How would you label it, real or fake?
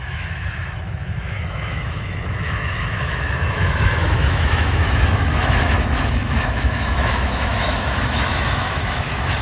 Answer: fake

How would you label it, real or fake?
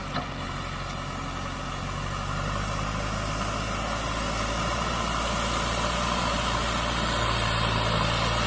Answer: real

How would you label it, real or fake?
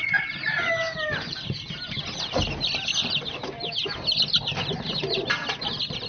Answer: real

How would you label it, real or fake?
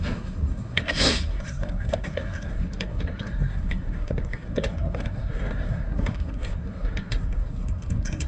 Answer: fake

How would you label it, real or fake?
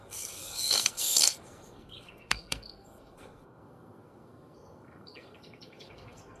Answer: fake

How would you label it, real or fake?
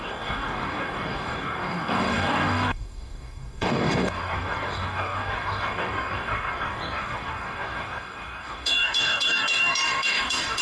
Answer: fake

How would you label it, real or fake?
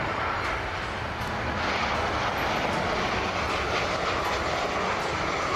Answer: real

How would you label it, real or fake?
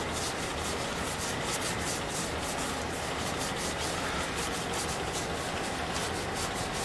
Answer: real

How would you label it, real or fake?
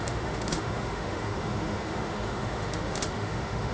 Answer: fake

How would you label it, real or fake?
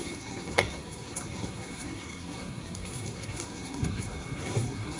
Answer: fake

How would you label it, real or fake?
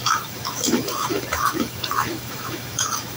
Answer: fake